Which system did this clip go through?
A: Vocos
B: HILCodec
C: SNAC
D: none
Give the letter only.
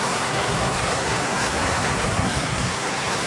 C